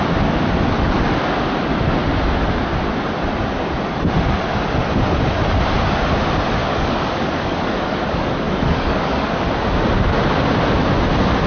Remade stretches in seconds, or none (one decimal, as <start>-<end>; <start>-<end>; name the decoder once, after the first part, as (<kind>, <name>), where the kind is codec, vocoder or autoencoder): 6.6-9.5 (codec, DAC)